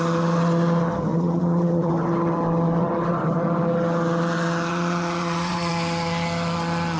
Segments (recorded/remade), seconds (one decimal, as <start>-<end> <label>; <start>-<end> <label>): 0.0-1.1 recorded; 1.1-1.9 remade; 1.9-4.7 recorded; 4.7-5.7 remade; 5.7-7.0 recorded

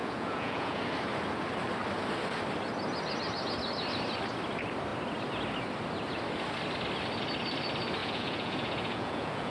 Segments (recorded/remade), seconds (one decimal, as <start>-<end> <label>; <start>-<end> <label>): 0.0-0.8 remade; 0.8-8.0 recorded; 8.0-9.5 remade

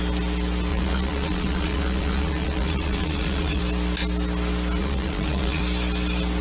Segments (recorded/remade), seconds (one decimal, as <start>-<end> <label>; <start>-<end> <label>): 0.0-0.7 recorded; 0.7-3.6 remade; 3.6-4.8 recorded; 4.8-5.6 remade; 5.6-6.4 recorded

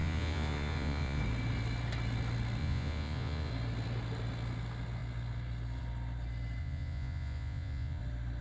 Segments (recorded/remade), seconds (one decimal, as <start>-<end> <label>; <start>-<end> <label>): 0.0-1.2 remade; 1.2-2.6 recorded; 2.6-3.5 remade; 3.5-6.6 recorded; 6.6-8.0 remade; 8.0-8.4 recorded

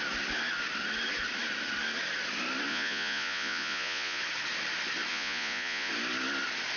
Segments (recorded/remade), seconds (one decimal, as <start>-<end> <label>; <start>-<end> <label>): 0.0-2.7 recorded; 2.7-4.2 remade; 4.2-5.1 recorded; 5.1-5.9 remade; 5.9-6.8 recorded

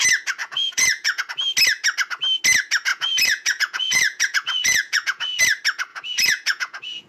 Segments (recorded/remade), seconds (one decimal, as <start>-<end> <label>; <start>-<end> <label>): 0.0-0.4 recorded; 0.4-1.2 remade; 1.2-2.9 recorded; 2.9-5.4 remade; 5.4-5.9 recorded; 5.9-7.1 remade

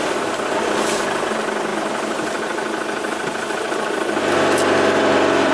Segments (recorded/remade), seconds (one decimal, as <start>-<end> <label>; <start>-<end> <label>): 0.0-5.5 recorded